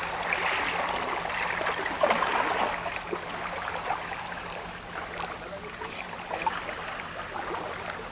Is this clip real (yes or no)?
yes